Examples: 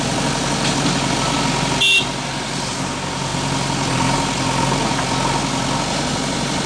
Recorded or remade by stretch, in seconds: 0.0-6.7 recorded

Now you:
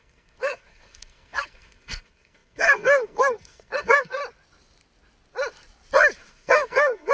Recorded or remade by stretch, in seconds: 0.0-4.2 remade; 4.2-6.3 recorded; 6.3-7.1 remade

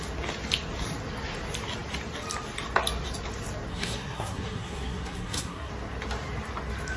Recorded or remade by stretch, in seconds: 0.0-3.7 recorded; 3.7-5.7 remade; 5.7-7.0 recorded

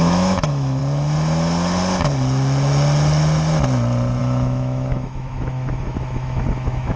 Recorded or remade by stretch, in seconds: 0.0-0.8 remade; 0.8-4.2 recorded; 4.2-7.0 remade